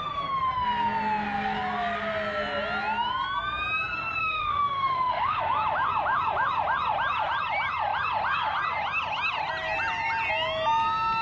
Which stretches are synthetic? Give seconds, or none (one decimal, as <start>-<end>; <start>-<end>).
4.2-5.4